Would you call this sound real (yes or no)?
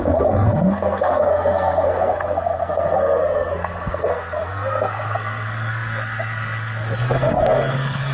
no